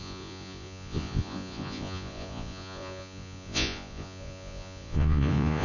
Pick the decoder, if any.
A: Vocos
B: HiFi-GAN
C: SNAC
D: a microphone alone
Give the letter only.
A